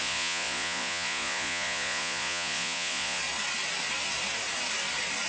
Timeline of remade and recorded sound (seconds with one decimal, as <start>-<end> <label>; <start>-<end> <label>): 0.0-3.2 remade; 3.2-5.3 recorded